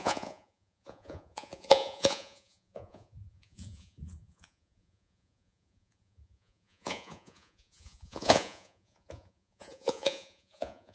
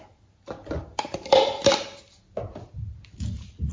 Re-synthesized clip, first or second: first